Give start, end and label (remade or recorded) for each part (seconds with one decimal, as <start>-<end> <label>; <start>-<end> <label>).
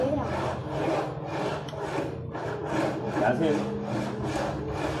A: 0.0-5.0 recorded